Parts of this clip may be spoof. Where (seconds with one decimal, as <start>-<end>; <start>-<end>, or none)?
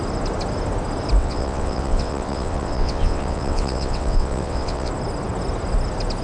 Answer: 1.2-4.9